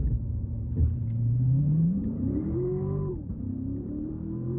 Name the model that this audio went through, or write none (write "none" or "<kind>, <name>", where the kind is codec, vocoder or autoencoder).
vocoder, BigVGAN v2